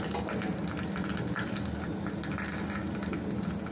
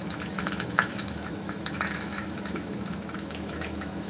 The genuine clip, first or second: first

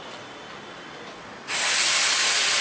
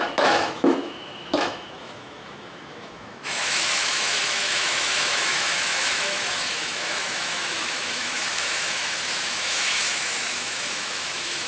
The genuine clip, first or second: first